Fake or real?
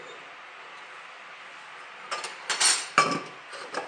real